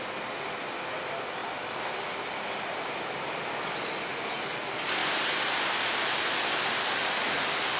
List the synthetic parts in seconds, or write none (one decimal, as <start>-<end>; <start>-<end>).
none